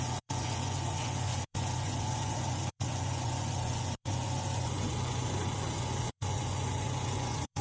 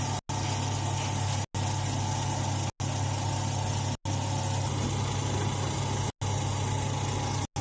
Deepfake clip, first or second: first